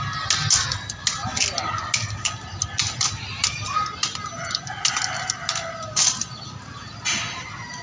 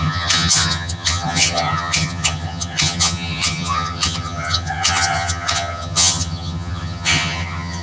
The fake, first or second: second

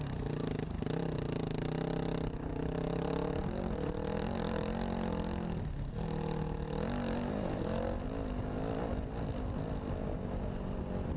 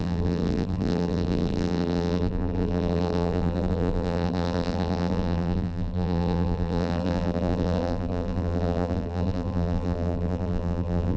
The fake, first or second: second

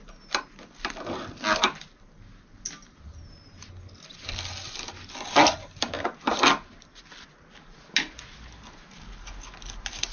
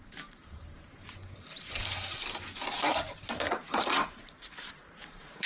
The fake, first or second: second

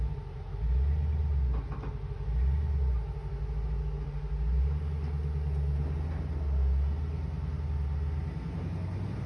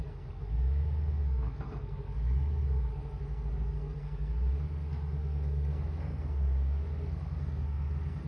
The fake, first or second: second